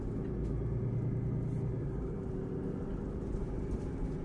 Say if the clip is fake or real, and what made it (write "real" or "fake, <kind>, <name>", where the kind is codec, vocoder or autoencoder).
real